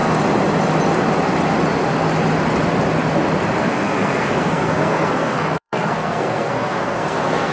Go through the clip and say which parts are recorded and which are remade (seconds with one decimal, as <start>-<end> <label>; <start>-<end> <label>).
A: 0.0-3.6 recorded; 3.6-7.5 remade